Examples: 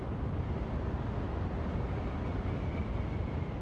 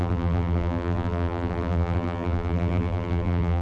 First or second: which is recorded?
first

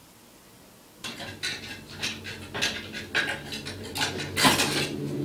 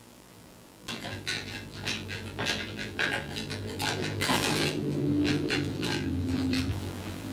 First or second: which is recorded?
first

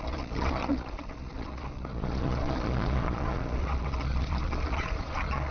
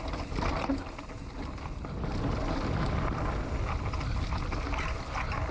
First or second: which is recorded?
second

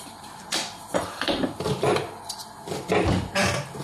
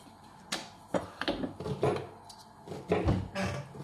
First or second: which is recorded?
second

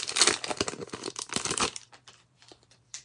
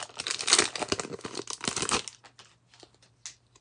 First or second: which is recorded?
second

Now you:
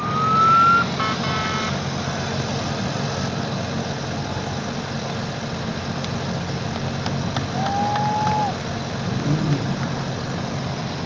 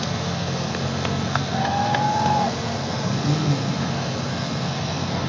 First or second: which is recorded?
first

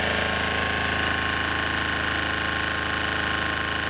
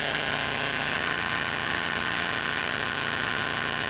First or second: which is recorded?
first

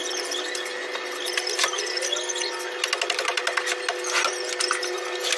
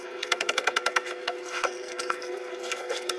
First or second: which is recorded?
first